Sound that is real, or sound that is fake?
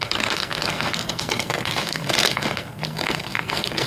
fake